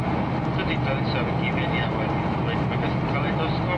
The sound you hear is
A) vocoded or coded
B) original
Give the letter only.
B